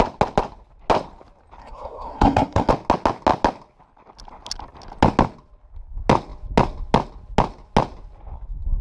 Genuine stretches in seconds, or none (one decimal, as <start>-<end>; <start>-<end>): 0.0-1.6; 2.7-8.8